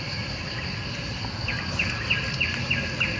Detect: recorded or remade recorded